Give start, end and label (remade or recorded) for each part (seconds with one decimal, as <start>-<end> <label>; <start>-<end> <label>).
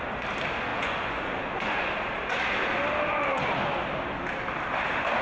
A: 0.0-0.7 recorded; 0.7-1.9 remade; 1.9-5.2 recorded